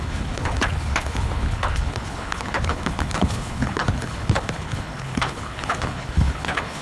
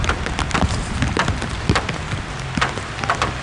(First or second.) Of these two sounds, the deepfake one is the first